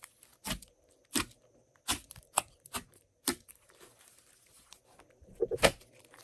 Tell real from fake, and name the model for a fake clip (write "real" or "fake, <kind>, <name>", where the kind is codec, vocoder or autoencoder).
real